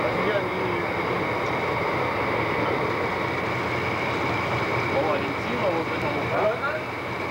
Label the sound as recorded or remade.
recorded